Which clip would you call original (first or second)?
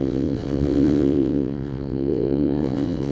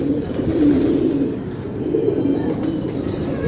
second